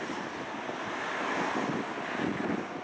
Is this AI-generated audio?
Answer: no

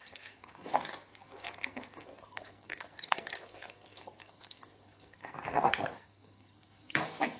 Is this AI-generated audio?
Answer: yes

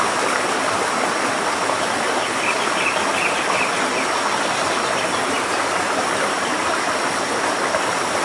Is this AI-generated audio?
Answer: no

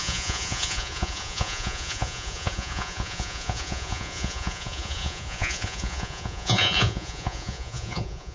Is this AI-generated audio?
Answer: yes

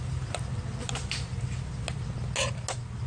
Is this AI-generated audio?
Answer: no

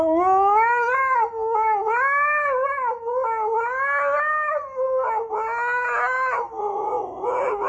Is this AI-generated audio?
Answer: no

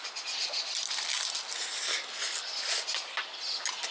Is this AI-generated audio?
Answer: no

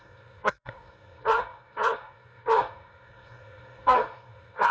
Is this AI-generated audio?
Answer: yes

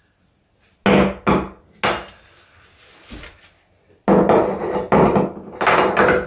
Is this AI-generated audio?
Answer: no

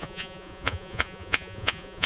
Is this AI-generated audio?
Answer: yes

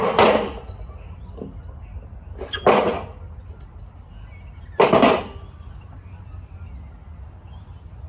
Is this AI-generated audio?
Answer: no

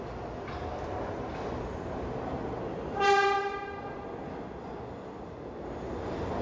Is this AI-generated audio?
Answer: no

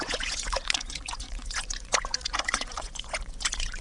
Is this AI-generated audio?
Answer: yes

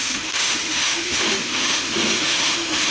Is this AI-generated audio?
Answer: yes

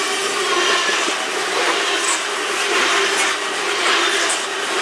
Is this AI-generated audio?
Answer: no